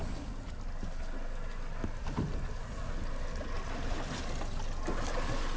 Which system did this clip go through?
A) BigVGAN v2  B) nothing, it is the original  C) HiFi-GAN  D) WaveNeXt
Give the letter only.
B